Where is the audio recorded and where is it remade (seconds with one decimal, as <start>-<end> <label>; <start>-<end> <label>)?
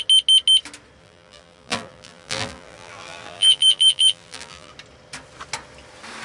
0.0-1.0 recorded; 1.0-4.7 remade; 4.7-6.2 recorded